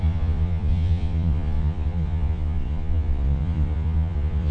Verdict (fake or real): fake